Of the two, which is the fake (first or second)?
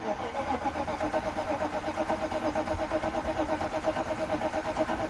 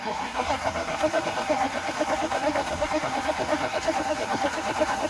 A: second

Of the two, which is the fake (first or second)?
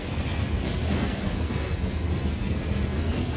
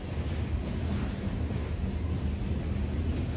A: first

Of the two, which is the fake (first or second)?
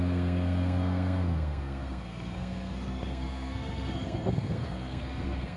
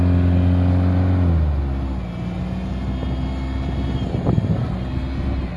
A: first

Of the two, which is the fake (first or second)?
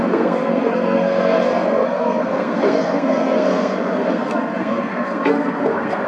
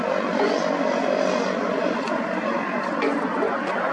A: first